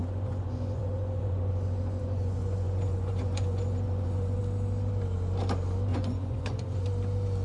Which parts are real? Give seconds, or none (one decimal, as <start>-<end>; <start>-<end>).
4.4-5.9; 6.9-7.4